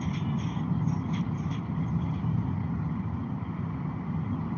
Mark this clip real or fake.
real